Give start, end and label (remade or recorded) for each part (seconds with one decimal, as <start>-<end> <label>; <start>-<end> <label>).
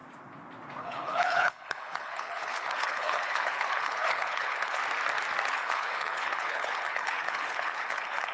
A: 0.0-0.8 recorded; 0.8-4.8 remade; 4.8-5.5 recorded; 5.5-8.3 remade